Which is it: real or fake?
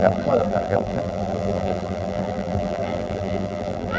fake